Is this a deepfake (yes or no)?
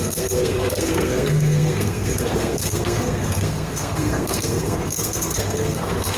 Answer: yes